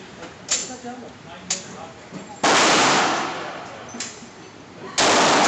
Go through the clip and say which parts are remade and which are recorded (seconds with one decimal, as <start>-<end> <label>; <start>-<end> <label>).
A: 0.0-5.5 recorded